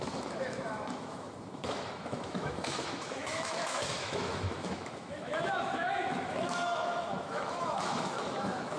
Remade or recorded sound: remade